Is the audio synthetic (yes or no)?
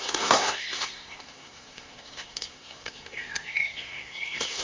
yes